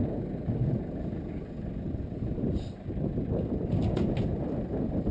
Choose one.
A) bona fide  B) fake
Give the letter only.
A